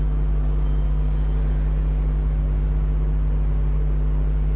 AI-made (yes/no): no